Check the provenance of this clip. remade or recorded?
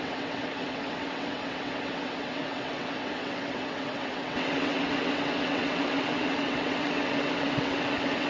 remade